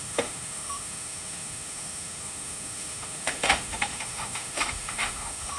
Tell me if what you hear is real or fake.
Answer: fake